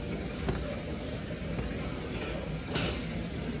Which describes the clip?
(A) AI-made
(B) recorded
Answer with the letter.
B